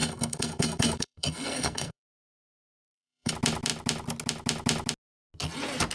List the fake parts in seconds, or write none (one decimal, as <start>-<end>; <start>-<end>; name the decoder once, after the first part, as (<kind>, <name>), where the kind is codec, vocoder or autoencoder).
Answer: 0.0-3.3 (codec, SNAC)